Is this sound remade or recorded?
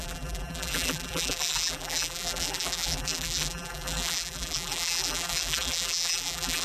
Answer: remade